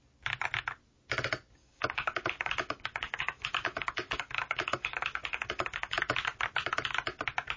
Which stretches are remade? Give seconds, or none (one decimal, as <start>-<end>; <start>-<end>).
1.6-6.0